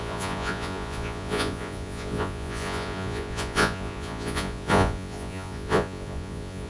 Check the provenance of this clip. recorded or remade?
remade